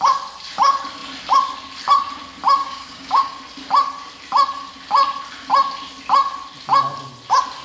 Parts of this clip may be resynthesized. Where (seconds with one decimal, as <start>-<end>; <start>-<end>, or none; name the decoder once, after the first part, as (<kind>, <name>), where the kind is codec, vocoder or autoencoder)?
2.6-3.4 (codec, DAC)